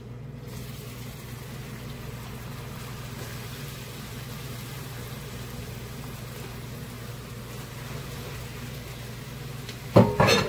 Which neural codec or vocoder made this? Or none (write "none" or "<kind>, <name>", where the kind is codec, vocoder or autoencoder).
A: none